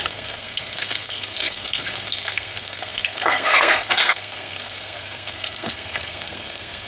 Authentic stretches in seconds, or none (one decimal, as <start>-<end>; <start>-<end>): none